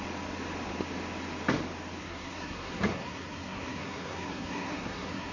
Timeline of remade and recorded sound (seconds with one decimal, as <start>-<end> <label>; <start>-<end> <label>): 0.0-2.0 recorded; 2.0-5.3 remade